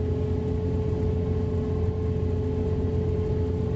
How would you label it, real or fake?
real